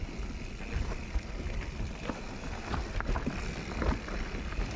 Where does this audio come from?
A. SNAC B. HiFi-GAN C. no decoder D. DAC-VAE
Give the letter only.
C